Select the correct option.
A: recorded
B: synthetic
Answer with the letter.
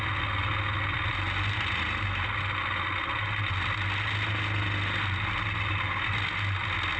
A